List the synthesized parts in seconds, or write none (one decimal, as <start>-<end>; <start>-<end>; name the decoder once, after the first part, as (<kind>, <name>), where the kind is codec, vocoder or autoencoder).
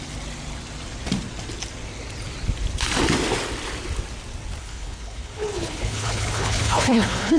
4.6-7.4 (codec, HILCodec)